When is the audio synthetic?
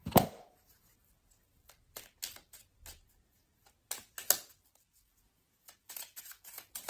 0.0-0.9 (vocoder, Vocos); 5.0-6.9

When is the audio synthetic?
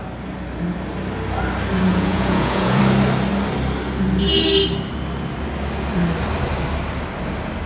1.9-2.8 (vocoder, Vocos)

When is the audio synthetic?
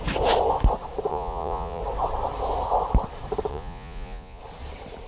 1.1-1.8 (vocoder, Vocos); 3.5-4.4